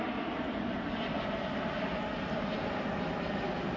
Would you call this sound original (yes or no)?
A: yes